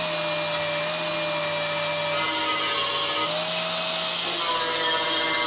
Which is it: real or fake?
real